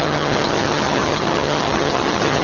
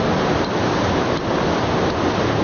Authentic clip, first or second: second